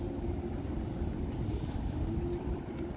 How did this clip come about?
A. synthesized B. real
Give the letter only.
A